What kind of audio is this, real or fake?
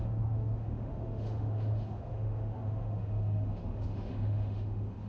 fake